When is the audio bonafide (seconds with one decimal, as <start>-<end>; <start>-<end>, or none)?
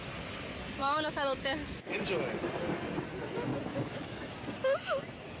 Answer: 0.0-0.8; 1.9-3.7; 4.3-5.4